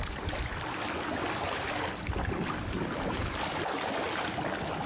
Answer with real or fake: real